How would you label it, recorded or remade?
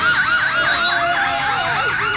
recorded